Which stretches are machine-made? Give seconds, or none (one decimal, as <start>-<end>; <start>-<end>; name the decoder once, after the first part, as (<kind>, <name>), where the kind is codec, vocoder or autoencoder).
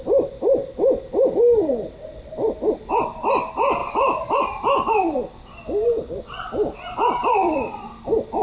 3.8-4.4 (vocoder, BigVGAN v2); 7.2-7.9